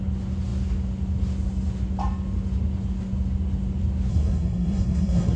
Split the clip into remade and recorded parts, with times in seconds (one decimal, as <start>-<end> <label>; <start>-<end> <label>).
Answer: 0.0-4.1 recorded; 4.1-5.4 remade